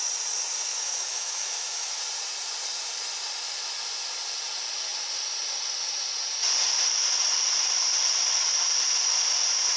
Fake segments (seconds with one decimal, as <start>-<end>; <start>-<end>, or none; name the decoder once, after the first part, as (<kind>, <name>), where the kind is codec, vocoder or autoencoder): 0.7-2.0 (autoencoder, DAC-VAE)